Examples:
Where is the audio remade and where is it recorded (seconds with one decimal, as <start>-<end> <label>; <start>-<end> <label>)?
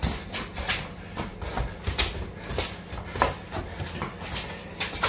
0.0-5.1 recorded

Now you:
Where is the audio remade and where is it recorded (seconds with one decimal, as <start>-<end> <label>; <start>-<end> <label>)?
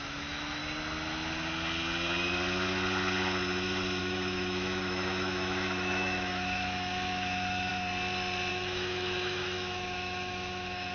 0.0-0.6 remade; 0.6-4.0 recorded; 4.0-7.7 remade; 7.7-8.5 recorded; 8.5-10.9 remade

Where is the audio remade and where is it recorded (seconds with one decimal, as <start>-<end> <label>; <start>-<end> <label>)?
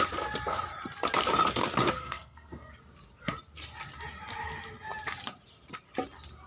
0.0-2.0 recorded; 2.0-2.7 remade; 2.7-6.5 recorded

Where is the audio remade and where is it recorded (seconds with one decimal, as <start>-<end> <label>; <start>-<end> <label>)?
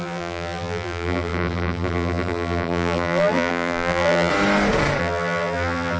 0.0-4.3 remade; 4.3-5.0 recorded; 5.0-6.0 remade